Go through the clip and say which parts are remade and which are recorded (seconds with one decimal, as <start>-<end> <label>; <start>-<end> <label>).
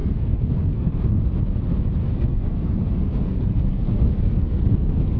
0.0-0.9 remade; 0.9-2.0 recorded; 2.0-5.2 remade